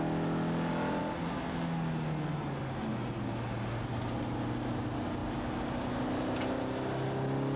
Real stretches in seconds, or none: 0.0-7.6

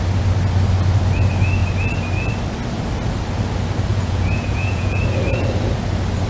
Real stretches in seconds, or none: 0.0-3.9; 5.0-6.3

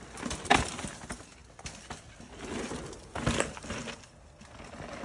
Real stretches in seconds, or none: 0.0-5.0